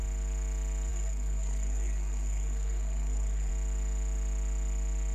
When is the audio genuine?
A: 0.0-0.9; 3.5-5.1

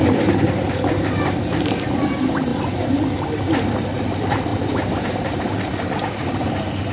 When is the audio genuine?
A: 2.5-3.2

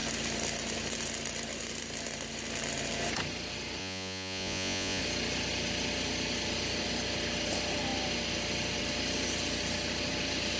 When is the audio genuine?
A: 0.0-3.8; 5.0-10.6

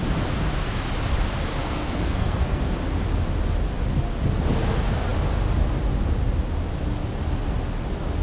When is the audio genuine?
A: 0.0-1.6; 2.6-8.2